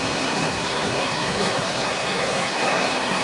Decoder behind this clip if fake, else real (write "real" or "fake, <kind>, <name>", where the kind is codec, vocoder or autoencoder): fake, codec, SNAC